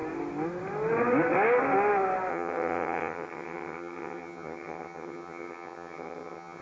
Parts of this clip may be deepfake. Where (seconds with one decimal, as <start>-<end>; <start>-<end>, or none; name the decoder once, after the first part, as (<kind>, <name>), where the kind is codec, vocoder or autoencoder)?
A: 2.3-6.6 (vocoder, HiFi-GAN)